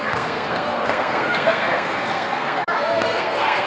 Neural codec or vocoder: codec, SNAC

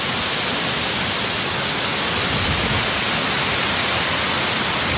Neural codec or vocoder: none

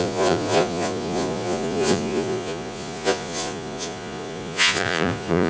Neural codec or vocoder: vocoder, Vocos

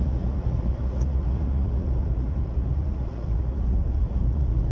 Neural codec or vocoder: vocoder, Vocos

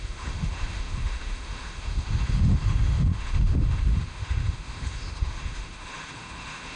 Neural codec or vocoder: autoencoder, DAC-VAE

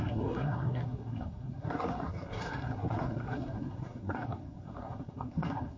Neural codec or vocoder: codec, SNAC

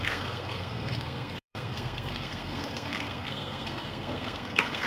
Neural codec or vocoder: codec, SNAC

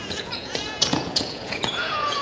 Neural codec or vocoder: vocoder, Vocos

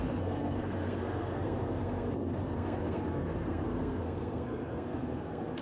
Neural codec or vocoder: codec, SNAC